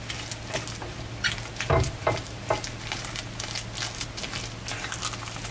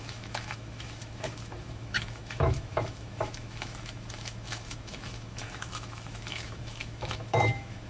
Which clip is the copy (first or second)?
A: second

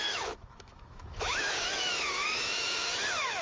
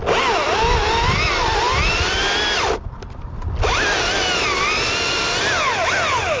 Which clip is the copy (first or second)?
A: first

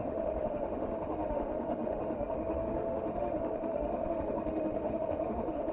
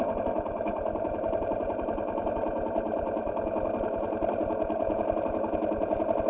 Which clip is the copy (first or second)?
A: first